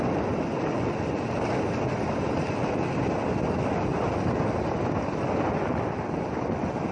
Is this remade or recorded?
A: recorded